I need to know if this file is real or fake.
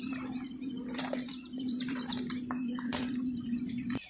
fake